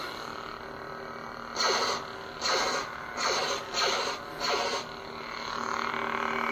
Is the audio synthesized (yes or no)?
no